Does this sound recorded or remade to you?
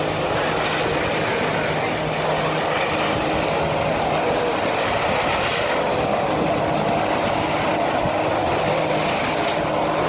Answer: recorded